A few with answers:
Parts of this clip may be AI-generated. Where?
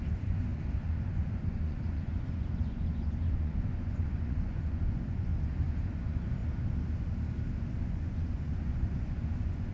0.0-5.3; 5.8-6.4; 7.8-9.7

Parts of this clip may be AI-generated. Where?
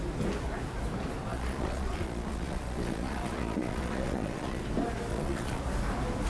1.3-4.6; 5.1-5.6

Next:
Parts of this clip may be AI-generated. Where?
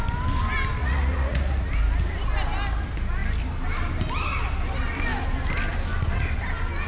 0.8-1.7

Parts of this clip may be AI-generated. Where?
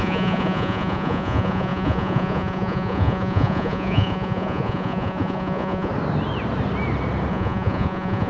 0.0-5.9; 7.3-8.3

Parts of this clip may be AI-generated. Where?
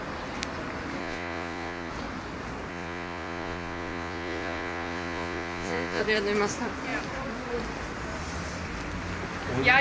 1.0-1.9; 2.7-6.0